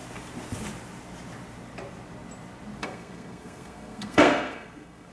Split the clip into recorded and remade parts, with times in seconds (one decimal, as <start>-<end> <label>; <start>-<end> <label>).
0.0-2.8 recorded; 2.8-5.1 remade

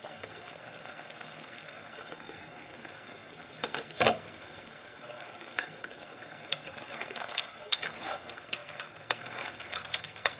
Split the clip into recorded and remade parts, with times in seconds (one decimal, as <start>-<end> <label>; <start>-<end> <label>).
0.0-10.4 remade

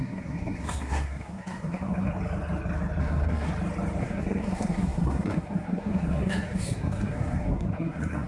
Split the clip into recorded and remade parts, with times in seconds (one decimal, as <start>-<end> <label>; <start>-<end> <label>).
0.0-2.1 remade; 2.1-3.0 recorded; 3.0-3.5 remade; 3.5-4.0 recorded; 4.0-8.3 remade